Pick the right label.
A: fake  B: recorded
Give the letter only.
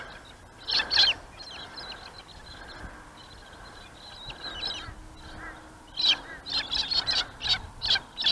B